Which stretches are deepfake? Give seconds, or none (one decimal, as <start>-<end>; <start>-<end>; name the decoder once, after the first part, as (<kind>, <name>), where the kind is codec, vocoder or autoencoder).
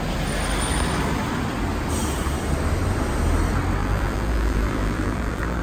3.8-5.6 (vocoder, BigVGAN v2)